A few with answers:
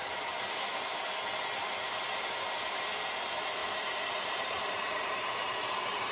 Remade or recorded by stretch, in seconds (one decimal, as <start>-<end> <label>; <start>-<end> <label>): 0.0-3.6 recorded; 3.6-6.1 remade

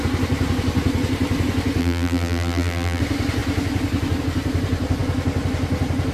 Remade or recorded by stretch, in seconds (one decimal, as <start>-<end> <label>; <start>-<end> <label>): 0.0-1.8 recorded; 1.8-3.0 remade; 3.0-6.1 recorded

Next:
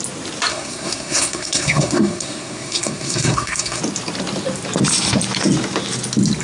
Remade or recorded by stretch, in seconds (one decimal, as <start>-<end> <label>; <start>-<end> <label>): 0.0-0.5 recorded; 0.5-3.8 remade; 3.8-6.4 recorded